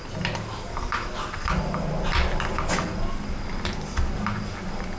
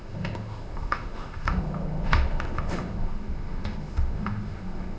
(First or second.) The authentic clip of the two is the first